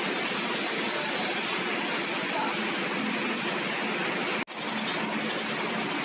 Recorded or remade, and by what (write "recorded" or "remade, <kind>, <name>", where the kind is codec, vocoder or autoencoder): recorded